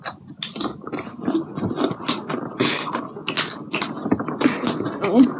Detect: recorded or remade recorded